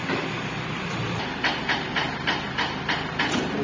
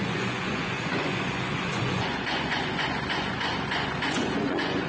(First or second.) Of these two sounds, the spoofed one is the second